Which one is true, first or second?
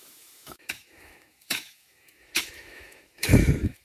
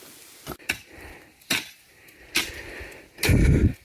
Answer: second